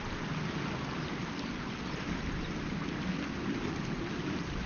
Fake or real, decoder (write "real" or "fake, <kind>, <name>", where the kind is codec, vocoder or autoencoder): real